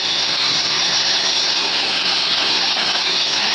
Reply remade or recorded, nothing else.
remade